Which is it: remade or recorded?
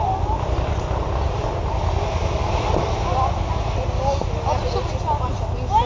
recorded